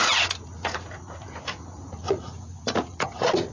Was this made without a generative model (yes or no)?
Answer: no